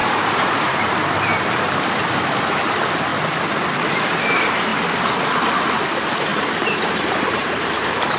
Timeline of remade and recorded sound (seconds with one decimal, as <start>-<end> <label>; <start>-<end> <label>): 0.0-1.8 remade; 1.8-6.3 recorded; 6.3-8.2 remade